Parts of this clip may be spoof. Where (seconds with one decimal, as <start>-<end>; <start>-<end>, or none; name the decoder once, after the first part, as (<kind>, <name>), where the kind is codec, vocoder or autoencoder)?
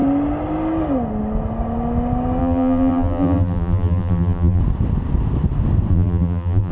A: 2.4-4.6 (vocoder, BigVGAN v2); 5.9-6.7